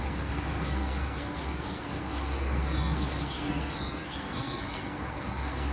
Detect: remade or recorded remade